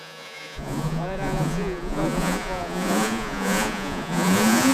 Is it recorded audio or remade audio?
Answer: remade